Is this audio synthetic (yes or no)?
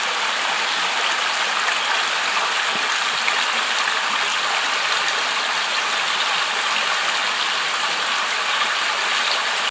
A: no